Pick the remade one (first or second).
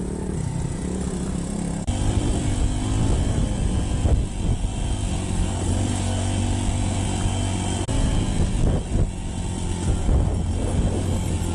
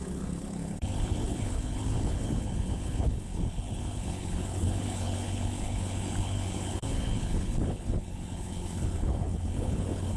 second